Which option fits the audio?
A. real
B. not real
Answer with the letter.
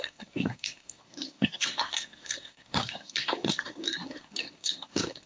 B